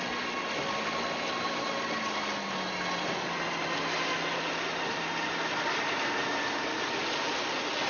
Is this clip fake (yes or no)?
no